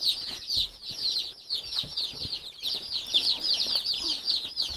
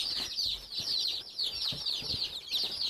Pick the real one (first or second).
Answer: second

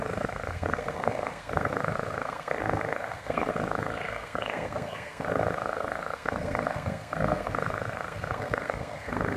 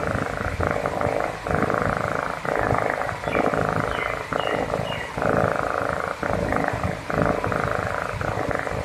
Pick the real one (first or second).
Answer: second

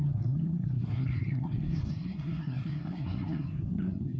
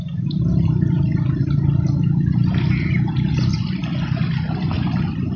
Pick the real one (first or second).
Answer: second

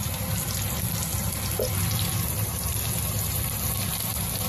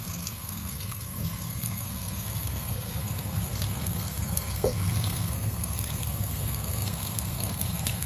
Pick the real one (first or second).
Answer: first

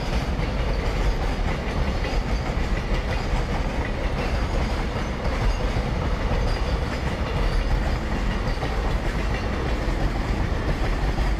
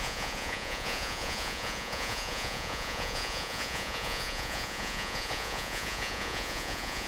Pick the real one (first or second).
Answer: first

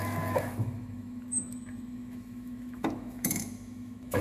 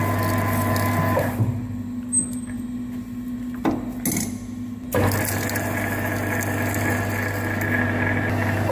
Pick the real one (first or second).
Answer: second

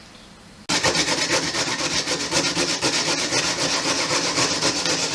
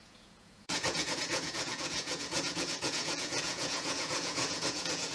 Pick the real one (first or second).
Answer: first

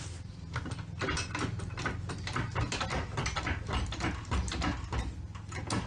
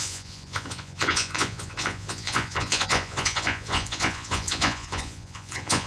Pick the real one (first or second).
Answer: first